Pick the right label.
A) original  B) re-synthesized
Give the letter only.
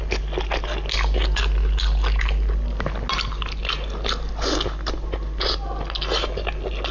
A